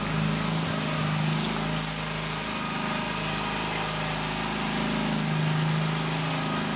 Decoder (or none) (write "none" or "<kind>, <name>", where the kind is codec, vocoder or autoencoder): none